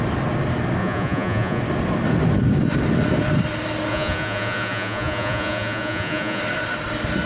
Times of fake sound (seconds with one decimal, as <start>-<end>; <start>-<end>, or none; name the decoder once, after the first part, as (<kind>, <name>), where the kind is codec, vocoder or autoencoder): 0.8-1.6 (vocoder, Vocos); 3.9-6.4